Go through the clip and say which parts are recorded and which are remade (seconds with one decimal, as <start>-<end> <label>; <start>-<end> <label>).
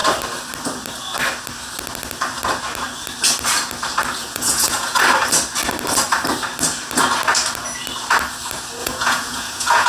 0.0-4.2 recorded; 4.2-5.0 remade; 5.0-8.8 recorded; 8.8-9.9 remade